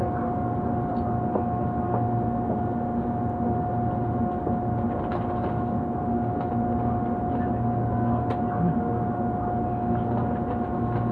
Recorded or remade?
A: recorded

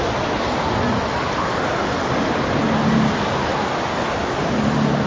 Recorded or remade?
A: recorded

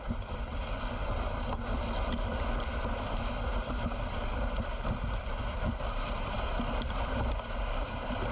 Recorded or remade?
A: recorded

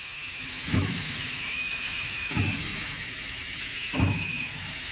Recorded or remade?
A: remade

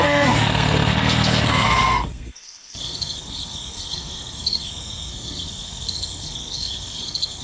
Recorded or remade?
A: remade